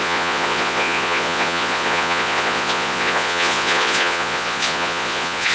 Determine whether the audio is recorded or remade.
remade